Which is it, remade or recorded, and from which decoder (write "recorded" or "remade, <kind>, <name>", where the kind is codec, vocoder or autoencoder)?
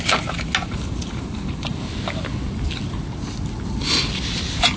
recorded